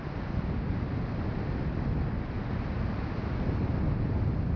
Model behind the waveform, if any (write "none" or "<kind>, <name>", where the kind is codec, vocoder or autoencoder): none